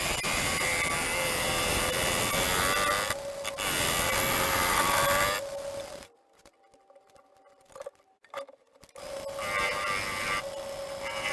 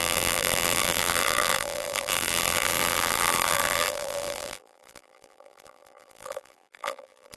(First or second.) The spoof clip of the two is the second